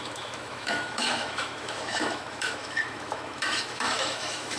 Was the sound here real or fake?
fake